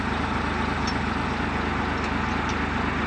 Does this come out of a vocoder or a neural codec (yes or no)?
no